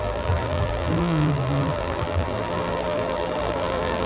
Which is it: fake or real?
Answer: fake